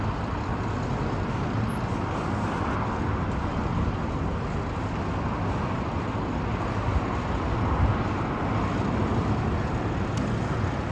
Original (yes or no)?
yes